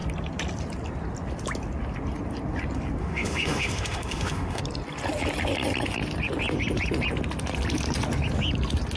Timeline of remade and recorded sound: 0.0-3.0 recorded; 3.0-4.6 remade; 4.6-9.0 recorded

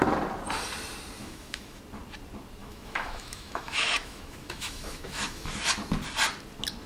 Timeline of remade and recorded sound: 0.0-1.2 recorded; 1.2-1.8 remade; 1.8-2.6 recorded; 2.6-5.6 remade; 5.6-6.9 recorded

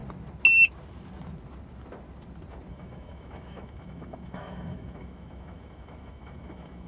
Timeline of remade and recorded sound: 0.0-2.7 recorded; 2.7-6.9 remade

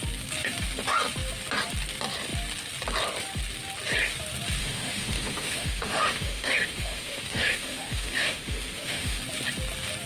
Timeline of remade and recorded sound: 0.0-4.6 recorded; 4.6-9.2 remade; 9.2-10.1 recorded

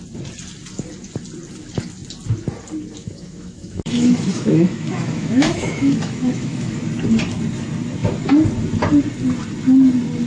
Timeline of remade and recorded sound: 0.0-3.0 recorded; 3.0-6.8 remade; 6.8-10.3 recorded

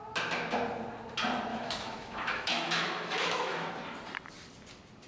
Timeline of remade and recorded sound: 0.0-1.5 recorded; 1.5-3.7 remade; 3.7-5.1 recorded

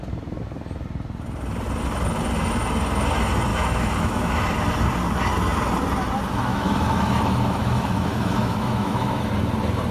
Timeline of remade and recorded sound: 0.0-3.5 recorded; 3.5-4.3 remade; 4.3-6.5 recorded; 6.5-9.3 remade; 9.3-9.9 recorded